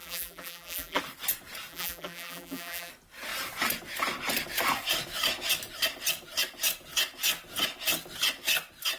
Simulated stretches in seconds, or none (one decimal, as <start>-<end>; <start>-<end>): 0.0-1.0; 1.7-2.9